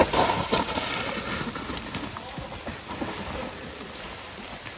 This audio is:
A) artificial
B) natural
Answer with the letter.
B